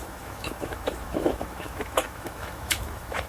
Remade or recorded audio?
remade